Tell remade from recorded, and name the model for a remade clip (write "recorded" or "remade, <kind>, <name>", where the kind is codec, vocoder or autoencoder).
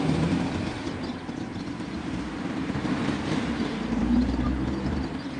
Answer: remade, vocoder, BigVGAN v2